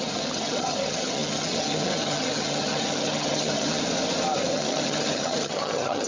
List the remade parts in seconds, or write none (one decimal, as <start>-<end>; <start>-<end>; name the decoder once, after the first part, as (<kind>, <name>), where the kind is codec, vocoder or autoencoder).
0.0-3.8 (vocoder, HiFi-GAN); 4.5-6.1

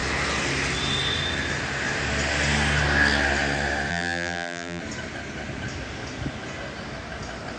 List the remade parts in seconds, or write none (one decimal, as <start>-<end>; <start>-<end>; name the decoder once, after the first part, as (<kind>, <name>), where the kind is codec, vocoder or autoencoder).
3.9-4.8 (vocoder, BigVGAN v2)

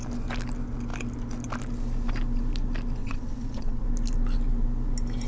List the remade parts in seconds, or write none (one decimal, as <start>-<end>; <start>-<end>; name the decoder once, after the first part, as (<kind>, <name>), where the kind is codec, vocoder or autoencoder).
3.0-3.8 (vocoder, WaveNeXt)

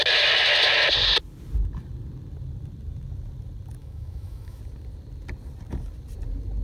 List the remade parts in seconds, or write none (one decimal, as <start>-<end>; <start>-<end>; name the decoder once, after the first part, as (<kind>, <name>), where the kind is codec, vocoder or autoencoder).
3.8-4.6 (autoencoder, DAC-VAE)

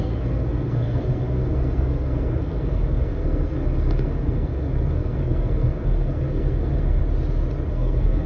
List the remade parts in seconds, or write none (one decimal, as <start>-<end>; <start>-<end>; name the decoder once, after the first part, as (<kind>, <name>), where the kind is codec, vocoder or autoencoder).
0.0-7.0 (codec, SNAC); 7.7-8.3

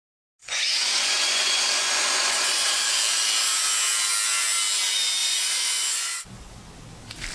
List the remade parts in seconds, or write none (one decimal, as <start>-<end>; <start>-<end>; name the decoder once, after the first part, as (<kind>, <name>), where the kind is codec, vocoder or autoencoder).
0.4-2.8 (vocoder, Vocos); 5.2-6.6

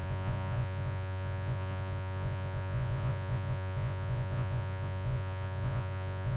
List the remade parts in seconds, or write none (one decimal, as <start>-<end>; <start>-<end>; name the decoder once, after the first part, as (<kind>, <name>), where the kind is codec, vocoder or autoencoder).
0.0-6.4 (vocoder, Vocos)